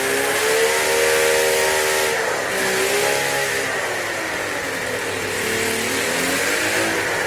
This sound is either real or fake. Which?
real